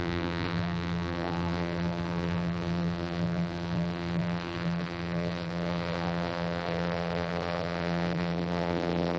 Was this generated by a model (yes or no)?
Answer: yes